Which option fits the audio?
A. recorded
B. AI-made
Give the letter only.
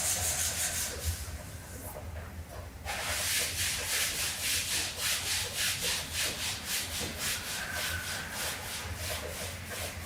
A